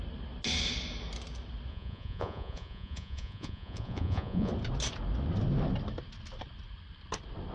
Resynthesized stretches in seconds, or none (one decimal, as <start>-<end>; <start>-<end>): 1.7-4.5